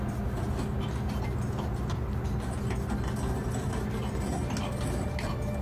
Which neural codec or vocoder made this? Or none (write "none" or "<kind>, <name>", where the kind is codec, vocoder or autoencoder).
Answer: none